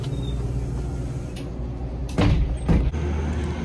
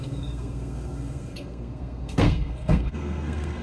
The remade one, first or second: second